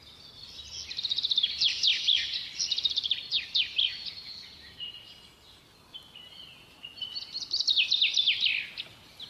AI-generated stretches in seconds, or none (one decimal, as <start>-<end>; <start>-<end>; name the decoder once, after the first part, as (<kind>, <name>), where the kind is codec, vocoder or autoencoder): none